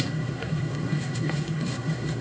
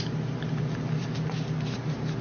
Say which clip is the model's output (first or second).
first